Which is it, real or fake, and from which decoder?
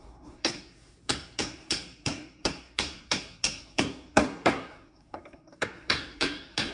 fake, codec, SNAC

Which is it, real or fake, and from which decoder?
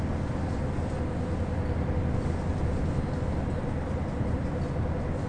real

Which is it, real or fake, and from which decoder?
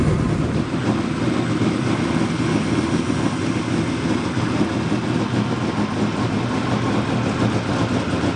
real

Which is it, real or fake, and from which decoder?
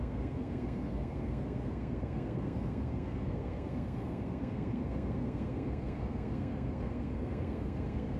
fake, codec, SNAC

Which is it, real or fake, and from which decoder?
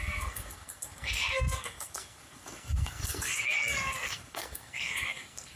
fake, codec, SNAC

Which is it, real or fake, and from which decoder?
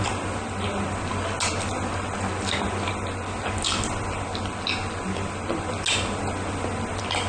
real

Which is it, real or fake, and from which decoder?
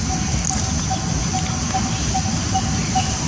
real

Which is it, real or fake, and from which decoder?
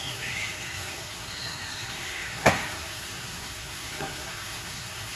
fake, codec, SNAC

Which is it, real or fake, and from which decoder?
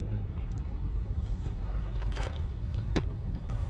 fake, codec, SNAC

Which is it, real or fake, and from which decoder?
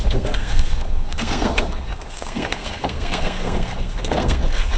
fake, codec, SNAC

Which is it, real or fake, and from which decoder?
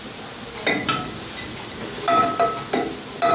real